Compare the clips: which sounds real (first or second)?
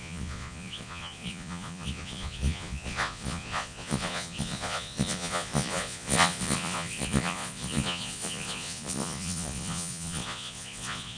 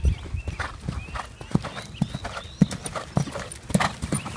second